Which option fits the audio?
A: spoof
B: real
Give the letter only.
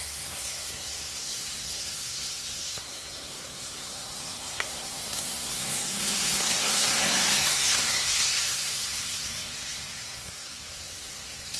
A